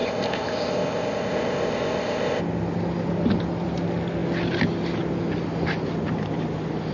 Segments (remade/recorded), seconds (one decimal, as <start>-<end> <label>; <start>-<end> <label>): 0.0-2.4 remade; 2.4-6.9 recorded